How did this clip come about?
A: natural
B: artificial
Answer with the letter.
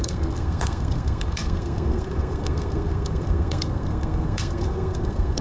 B